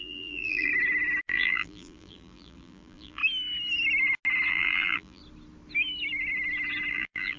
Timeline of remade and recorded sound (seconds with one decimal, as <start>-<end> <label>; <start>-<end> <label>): 0.0-0.7 remade; 0.7-1.2 recorded; 1.2-3.2 remade; 3.2-4.5 recorded; 4.5-5.2 remade; 5.2-6.9 recorded; 6.9-7.4 remade